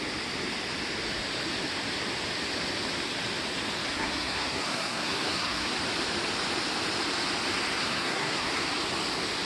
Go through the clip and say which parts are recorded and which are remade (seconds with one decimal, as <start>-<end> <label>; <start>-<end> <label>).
0.0-3.9 recorded; 3.9-5.7 remade; 5.7-7.8 recorded; 7.8-8.5 remade; 8.5-9.4 recorded